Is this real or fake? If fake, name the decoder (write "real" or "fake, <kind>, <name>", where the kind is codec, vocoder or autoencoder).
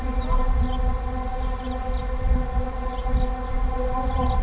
real